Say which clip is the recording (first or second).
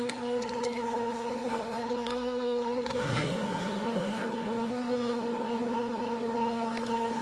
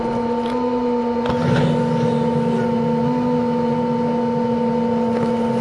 second